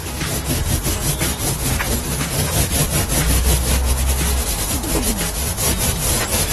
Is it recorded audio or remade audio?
recorded